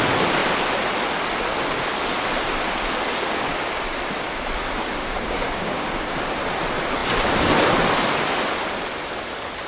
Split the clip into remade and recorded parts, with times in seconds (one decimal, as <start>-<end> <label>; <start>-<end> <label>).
0.0-5.0 recorded; 5.0-6.0 remade; 6.0-9.7 recorded